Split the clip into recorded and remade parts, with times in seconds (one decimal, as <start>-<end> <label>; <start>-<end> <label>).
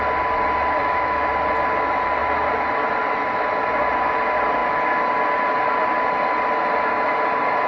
0.0-0.8 recorded; 0.8-1.3 remade; 1.3-7.7 recorded